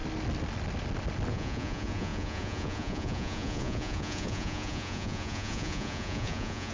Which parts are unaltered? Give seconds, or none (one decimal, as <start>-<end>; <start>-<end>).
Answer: 0.0-1.3